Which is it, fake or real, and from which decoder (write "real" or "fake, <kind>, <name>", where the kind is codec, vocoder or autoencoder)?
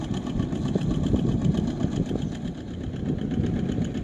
real